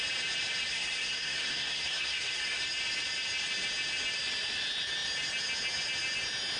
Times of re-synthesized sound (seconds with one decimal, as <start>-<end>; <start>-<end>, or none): 0.7-2.6